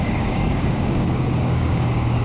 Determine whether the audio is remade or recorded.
remade